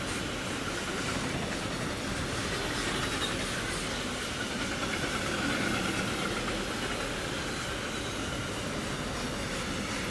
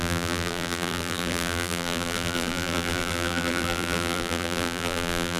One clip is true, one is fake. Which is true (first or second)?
first